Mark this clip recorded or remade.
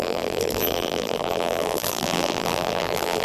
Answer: remade